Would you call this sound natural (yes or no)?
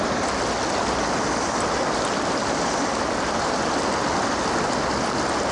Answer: yes